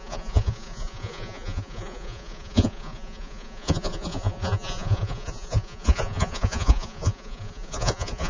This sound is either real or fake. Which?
fake